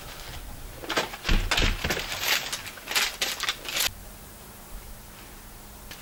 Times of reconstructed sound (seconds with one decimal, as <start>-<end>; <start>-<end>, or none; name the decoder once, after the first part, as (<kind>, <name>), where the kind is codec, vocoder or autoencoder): 4.0-4.9 (vocoder, BigVGAN v2)